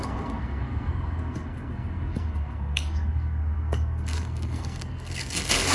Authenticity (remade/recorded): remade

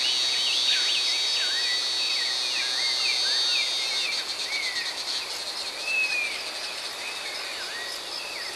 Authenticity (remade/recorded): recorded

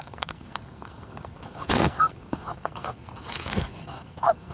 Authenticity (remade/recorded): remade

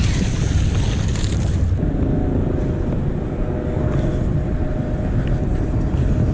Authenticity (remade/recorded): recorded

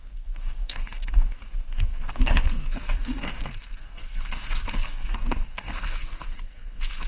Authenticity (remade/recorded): remade